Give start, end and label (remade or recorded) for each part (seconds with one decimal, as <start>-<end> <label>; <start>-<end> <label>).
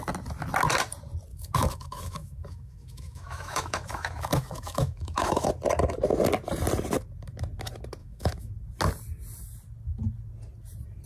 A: 0.0-1.3 recorded; 1.3-5.5 remade; 5.5-8.0 recorded; 8.0-8.5 remade; 8.5-11.1 recorded